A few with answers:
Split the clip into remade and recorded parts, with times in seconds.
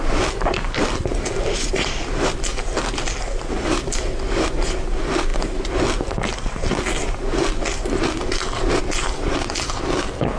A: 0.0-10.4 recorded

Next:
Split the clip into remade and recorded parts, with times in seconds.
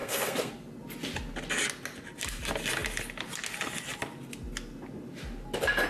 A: 0.0-0.5 remade; 0.5-5.9 recorded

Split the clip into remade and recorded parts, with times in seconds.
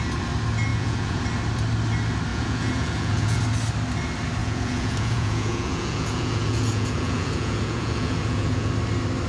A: 0.0-0.7 recorded; 0.7-1.2 remade; 1.2-2.3 recorded; 2.3-3.4 remade; 3.4-4.4 recorded; 4.4-8.7 remade; 8.7-9.3 recorded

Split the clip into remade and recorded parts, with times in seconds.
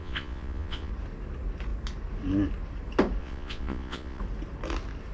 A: 0.0-0.9 remade; 0.9-3.2 recorded; 3.2-4.2 remade; 4.2-5.1 recorded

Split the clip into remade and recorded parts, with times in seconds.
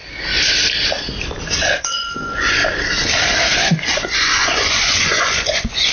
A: 0.0-1.6 recorded; 1.6-2.6 remade; 2.6-3.6 recorded; 3.6-5.9 remade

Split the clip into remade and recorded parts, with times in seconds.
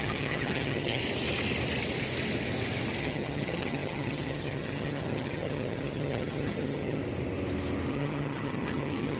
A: 0.0-1.0 remade; 1.0-3.0 recorded; 3.0-7.0 remade; 7.0-7.9 recorded; 7.9-9.2 remade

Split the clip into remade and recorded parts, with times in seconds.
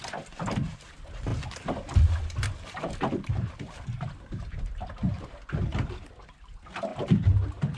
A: 0.0-7.8 recorded